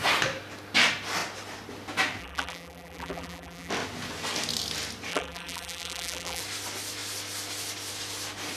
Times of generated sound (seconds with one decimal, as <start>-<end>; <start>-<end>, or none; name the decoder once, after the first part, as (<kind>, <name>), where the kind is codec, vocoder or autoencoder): 2.2-3.7 (vocoder, BigVGAN v2); 5.1-6.4